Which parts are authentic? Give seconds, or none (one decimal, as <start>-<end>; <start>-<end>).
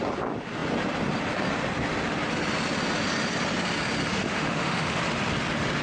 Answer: 0.0-4.1; 5.0-5.8